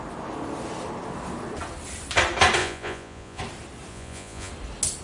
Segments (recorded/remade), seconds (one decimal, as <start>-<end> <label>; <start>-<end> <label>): 0.0-2.6 recorded; 2.6-3.4 remade; 3.4-3.9 recorded; 3.9-4.5 remade; 4.5-5.0 recorded